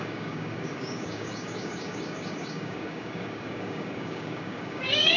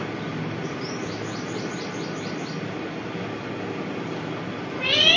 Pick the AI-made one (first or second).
first